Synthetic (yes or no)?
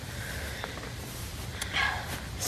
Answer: no